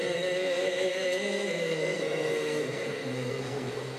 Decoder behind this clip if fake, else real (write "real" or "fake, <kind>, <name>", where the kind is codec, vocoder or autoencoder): fake, codec, SNAC